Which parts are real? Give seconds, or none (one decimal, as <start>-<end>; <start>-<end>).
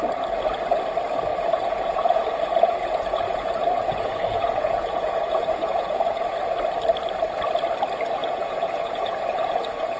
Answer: 0.0-1.3; 6.5-8.2